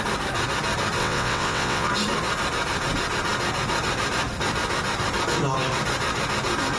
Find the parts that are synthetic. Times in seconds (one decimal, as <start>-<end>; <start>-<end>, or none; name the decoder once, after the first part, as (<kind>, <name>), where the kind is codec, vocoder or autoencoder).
1.0-1.9 (vocoder, WaveNeXt)